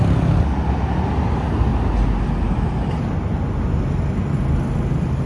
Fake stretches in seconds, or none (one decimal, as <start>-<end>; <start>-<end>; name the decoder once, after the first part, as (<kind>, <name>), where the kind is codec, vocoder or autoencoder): none